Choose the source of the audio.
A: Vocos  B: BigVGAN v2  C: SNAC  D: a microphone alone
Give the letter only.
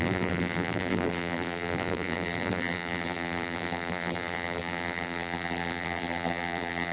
B